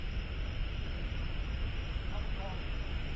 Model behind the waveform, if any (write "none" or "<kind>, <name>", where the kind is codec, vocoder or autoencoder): none